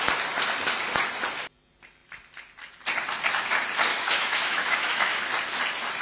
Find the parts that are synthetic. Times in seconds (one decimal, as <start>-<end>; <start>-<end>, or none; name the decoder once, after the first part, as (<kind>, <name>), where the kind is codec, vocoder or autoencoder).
3.9-5.2 (autoencoder, DAC-VAE)